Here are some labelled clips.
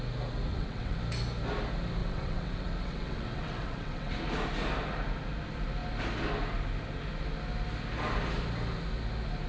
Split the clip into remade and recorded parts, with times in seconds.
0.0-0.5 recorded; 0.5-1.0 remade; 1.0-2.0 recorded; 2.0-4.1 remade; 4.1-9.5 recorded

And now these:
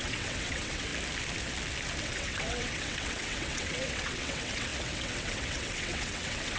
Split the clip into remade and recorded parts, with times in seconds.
0.0-0.9 remade; 0.9-2.0 recorded; 2.0-6.6 remade

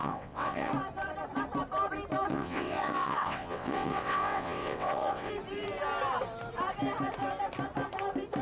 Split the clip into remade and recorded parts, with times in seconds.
0.0-0.7 remade; 0.7-2.3 recorded; 2.3-5.3 remade; 5.3-8.4 recorded

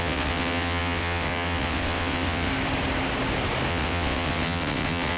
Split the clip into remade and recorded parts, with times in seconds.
0.0-2.5 remade; 2.5-3.7 recorded; 3.7-5.2 remade